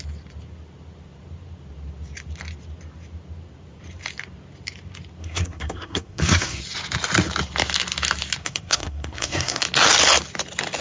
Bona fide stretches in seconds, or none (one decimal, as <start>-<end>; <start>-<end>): 0.0-5.2; 6.6-8.4; 9.6-10.8